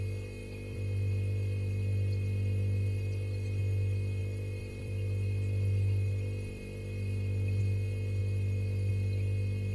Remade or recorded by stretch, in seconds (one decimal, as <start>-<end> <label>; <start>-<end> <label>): 0.0-0.4 recorded; 0.4-3.6 remade; 3.6-4.2 recorded; 4.2-7.6 remade; 7.6-8.2 recorded; 8.2-8.9 remade; 8.9-9.7 recorded